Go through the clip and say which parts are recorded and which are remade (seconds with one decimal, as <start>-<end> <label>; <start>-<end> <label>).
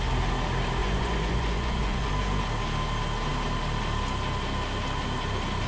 0.0-0.8 recorded; 0.8-2.1 remade; 2.1-5.7 recorded